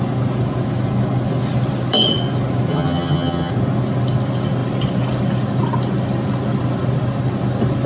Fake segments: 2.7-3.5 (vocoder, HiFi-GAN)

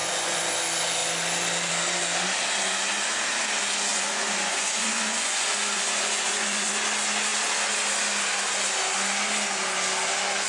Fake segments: 0.0-0.5 (vocoder, Vocos); 3.9-6.7

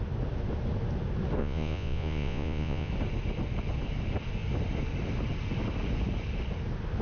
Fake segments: 1.4-2.9 (vocoder, Vocos)